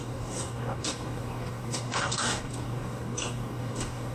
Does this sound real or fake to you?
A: fake